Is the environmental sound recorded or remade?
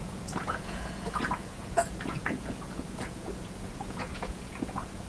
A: remade